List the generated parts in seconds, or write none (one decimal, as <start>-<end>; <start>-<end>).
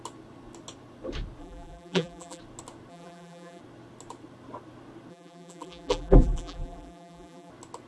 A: 1.4-2.4; 2.9-3.6; 5.1-7.5